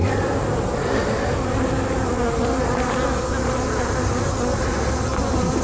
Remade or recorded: recorded